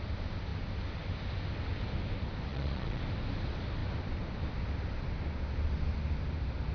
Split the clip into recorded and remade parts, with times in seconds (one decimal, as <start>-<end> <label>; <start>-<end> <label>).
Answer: 0.0-2.5 recorded; 2.5-3.0 remade; 3.0-6.7 recorded